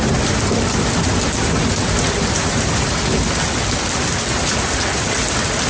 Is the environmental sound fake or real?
real